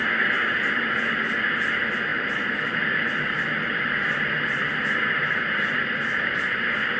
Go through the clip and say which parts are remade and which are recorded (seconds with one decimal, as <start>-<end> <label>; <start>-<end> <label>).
0.0-7.0 recorded